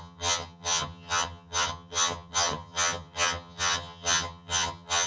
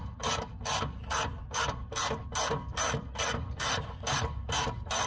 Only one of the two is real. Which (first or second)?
second